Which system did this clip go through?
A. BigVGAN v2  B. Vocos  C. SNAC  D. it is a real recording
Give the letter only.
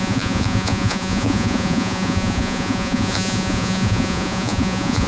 B